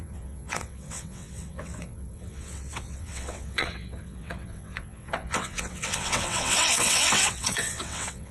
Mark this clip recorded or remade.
remade